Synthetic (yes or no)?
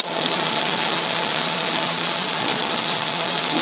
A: yes